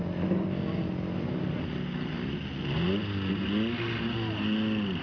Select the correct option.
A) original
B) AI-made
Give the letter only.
A